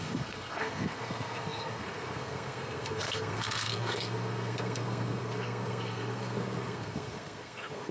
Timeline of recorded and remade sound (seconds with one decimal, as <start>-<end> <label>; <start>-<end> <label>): 0.0-7.9 remade